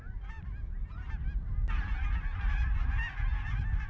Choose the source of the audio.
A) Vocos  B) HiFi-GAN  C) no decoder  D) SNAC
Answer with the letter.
C